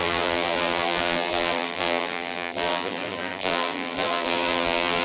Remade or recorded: remade